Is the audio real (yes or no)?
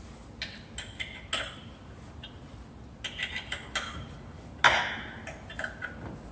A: yes